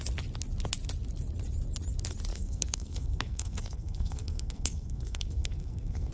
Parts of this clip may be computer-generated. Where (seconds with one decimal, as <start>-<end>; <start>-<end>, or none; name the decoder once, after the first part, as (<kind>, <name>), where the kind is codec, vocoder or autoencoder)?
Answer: 2.3-6.1 (codec, SNAC)